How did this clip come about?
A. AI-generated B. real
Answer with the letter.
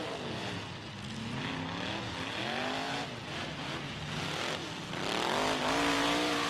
B